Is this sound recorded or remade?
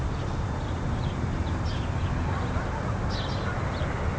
recorded